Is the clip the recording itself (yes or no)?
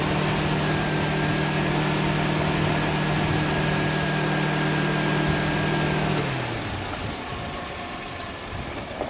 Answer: yes